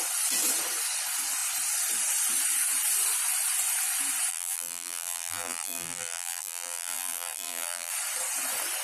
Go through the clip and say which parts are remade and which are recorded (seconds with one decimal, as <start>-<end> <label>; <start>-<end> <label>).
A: 0.0-4.3 recorded; 4.3-7.9 remade; 7.9-8.8 recorded